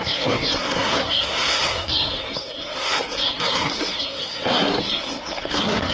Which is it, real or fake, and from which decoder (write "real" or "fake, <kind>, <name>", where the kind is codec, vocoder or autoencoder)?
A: fake, codec, SNAC